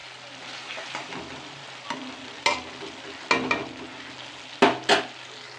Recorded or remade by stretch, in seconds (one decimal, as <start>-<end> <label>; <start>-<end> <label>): 0.0-5.6 recorded